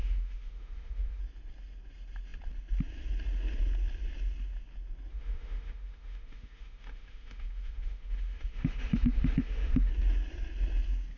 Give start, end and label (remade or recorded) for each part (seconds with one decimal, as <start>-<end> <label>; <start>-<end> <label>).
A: 0.0-1.2 remade; 1.2-5.1 recorded; 5.1-9.9 remade; 9.9-11.2 recorded